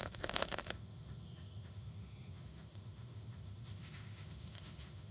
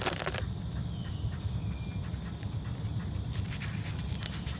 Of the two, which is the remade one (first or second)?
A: first